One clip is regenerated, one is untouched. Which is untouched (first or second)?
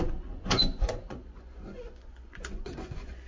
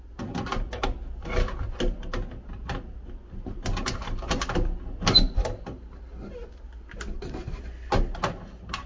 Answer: second